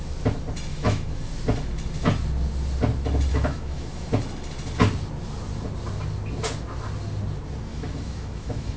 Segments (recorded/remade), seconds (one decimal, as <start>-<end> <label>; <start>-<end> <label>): 0.0-0.7 recorded; 0.7-1.3 remade; 1.3-3.3 recorded; 3.3-4.1 remade; 4.1-7.7 recorded; 7.7-8.8 remade